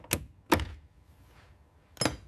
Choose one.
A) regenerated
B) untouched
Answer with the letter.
B